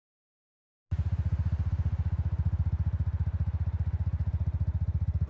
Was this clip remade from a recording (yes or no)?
no